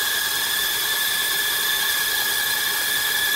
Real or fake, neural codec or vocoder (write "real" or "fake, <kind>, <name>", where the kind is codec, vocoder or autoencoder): real